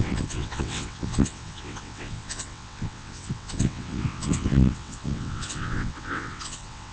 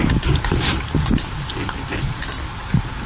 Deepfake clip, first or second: first